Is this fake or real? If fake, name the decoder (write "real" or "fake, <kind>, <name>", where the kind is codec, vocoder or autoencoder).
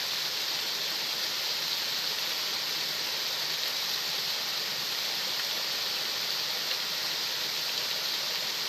real